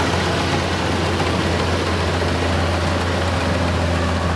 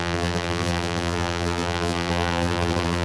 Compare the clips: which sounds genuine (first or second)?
first